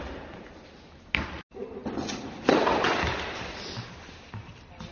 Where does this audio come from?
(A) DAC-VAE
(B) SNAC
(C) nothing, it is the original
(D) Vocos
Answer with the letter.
C